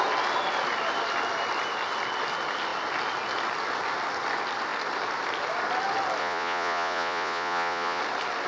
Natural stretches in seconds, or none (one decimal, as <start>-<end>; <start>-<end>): 0.0-6.2; 8.0-8.5